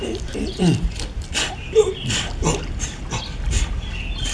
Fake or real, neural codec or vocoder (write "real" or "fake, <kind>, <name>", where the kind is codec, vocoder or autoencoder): real